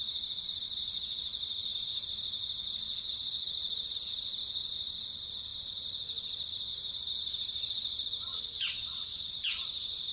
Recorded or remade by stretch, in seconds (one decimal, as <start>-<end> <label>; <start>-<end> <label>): 0.0-8.3 recorded; 8.3-9.3 remade; 9.3-10.1 recorded